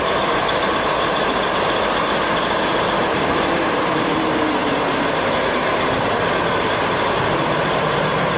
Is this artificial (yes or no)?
yes